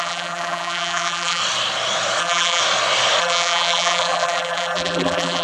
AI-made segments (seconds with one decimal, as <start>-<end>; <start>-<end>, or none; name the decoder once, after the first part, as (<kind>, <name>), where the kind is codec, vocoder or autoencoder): 0.0-1.4 (vocoder, BigVGAN v2); 2.2-2.6; 3.2-5.4